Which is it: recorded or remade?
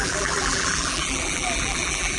remade